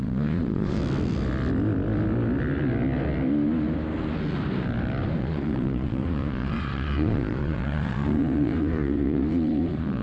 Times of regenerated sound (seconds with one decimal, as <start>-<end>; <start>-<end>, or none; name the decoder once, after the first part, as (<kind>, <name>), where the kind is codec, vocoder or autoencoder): 0.0-0.8 (vocoder, Vocos); 5.2-10.0